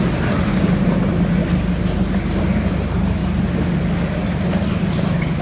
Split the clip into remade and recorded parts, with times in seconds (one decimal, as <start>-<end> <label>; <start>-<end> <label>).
0.0-1.4 remade; 1.4-2.4 recorded; 2.4-3.2 remade; 3.2-4.7 recorded; 4.7-5.4 remade